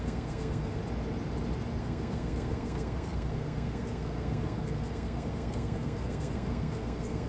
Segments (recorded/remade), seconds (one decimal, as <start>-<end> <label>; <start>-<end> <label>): 0.0-0.8 remade; 0.8-1.8 recorded; 1.8-7.3 remade